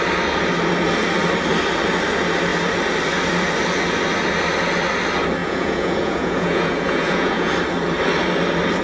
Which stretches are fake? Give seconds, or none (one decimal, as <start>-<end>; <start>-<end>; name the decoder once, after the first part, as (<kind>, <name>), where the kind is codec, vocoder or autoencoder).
5.4-7.5 (vocoder, Vocos)

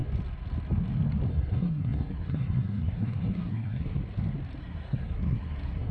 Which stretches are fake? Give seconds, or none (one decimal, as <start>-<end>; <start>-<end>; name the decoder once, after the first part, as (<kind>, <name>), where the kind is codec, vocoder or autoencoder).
1.3-4.0 (codec, SNAC); 4.6-5.9

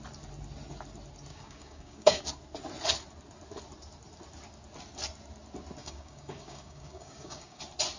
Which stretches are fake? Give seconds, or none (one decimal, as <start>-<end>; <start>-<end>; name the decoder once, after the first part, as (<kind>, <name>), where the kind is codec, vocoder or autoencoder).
1.3-2.2 (codec, DAC); 5.8-7.6

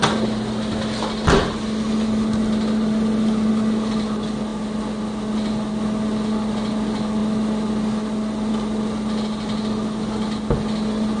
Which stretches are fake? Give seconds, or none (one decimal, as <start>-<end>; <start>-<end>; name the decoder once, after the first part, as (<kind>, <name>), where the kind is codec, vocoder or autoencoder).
none

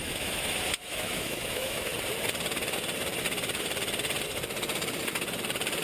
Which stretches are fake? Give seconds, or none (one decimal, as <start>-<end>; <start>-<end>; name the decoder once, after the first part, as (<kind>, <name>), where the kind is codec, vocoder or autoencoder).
0.0-1.9 (autoencoder, DAC-VAE)

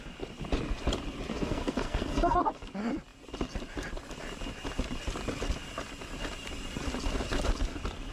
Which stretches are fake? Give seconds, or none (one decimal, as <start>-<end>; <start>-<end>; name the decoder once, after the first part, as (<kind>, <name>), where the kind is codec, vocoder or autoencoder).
1.3-2.7 (codec, SNAC)

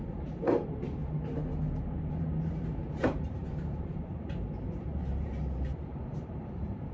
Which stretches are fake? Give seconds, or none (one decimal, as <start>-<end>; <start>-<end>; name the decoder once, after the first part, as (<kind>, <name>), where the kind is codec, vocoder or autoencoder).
0.0-1.0 (vocoder, BigVGAN v2); 2.1-5.3; 5.8-6.9

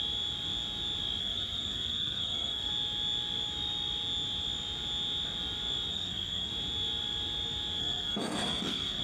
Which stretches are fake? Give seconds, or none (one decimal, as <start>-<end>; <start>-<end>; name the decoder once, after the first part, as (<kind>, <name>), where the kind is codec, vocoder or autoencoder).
1.2-2.7 (codec, SNAC); 5.9-6.5; 7.8-9.0